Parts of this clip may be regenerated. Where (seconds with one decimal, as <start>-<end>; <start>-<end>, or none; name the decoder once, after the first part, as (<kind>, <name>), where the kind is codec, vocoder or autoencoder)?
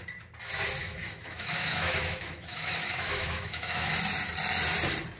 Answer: 0.8-3.9 (autoencoder, DAC-VAE)